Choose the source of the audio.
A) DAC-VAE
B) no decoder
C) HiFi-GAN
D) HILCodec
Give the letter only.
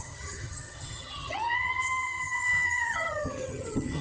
C